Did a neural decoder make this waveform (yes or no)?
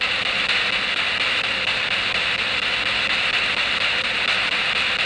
no